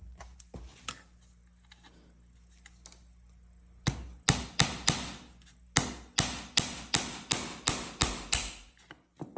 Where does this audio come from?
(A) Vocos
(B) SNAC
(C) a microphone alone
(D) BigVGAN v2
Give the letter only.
C